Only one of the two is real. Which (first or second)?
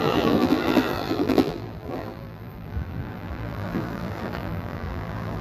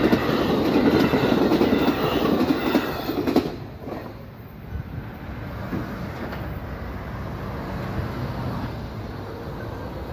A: second